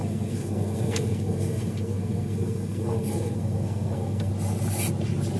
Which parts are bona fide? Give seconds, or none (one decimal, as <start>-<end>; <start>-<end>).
4.3-5.4